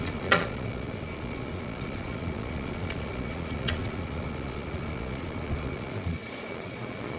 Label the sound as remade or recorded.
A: remade